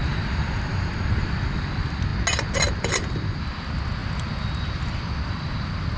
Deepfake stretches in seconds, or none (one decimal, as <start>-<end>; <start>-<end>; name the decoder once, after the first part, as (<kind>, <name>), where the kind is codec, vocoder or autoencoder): 0.0-0.9 (vocoder, BigVGAN v2)